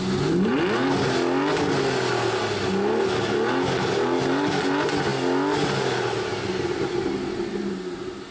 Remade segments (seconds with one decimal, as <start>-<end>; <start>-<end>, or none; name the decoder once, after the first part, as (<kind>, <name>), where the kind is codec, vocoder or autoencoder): none